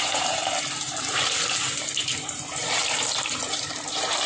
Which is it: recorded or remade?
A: remade